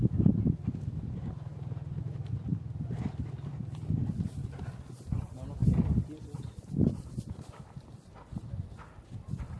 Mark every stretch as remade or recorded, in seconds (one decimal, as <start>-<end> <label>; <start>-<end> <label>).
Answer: 0.0-9.6 recorded

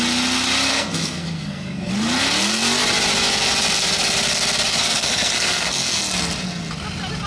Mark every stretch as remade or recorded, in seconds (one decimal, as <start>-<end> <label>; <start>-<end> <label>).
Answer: 0.0-0.7 recorded; 0.7-1.9 remade; 1.9-4.7 recorded; 4.7-6.0 remade; 6.0-7.3 recorded

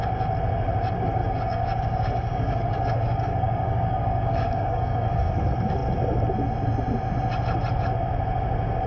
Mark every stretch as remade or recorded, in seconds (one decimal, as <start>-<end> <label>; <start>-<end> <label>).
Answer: 0.0-1.2 recorded; 1.2-5.3 remade; 5.3-8.9 recorded

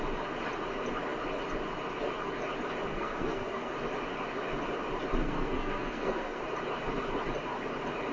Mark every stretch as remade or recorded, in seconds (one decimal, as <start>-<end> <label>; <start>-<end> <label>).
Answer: 0.0-2.9 recorded; 2.9-3.7 remade; 3.7-5.2 recorded; 5.2-6.4 remade; 6.4-8.1 recorded

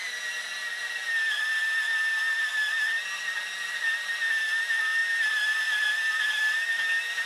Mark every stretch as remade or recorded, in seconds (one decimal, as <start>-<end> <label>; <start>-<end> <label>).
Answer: 0.0-7.3 recorded

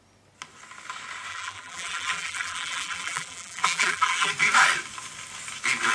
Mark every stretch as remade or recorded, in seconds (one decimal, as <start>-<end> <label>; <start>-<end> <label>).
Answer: 0.0-1.3 recorded; 1.3-4.3 remade; 4.3-5.9 recorded